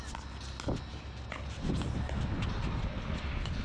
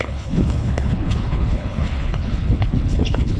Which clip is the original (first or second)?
first